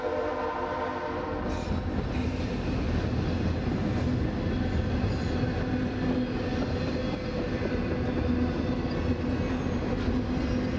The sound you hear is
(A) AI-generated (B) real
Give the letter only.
B